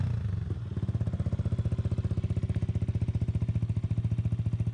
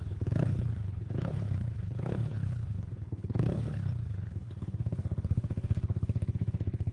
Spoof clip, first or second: second